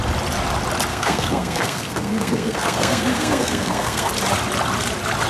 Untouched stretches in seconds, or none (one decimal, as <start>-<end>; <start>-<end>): 0.0-0.9; 4.1-5.3